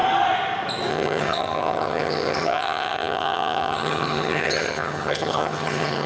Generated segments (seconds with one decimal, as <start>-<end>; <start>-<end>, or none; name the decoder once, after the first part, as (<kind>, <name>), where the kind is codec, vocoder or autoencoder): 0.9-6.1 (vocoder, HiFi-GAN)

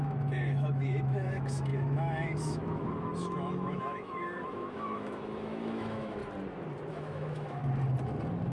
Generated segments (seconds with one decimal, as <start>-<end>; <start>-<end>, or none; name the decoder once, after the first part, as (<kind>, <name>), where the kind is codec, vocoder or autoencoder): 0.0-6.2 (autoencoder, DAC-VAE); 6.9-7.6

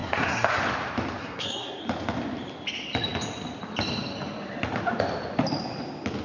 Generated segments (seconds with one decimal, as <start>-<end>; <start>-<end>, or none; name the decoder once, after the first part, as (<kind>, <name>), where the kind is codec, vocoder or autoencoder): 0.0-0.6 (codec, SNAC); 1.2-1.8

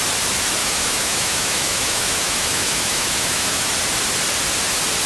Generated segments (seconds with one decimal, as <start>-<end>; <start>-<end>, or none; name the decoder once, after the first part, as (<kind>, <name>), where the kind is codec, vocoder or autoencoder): 0.6-3.7 (autoencoder, DAC-VAE)

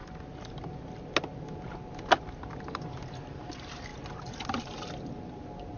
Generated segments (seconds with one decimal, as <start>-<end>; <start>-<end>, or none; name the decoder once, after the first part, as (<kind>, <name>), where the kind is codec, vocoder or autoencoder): none

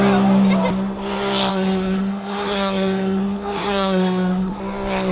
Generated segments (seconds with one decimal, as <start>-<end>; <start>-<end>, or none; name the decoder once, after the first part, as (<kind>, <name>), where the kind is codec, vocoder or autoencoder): 1.5-4.6 (codec, SNAC)

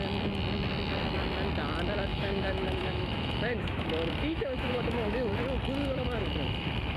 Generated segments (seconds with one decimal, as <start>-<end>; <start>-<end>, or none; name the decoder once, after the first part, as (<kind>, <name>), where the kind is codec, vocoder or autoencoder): 2.1-5.3 (autoencoder, DAC-VAE); 5.8-7.0

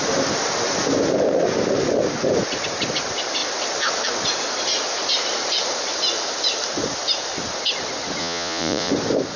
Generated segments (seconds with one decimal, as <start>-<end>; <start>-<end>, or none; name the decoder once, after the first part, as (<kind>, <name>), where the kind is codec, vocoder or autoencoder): 8.2-8.9 (vocoder, Vocos)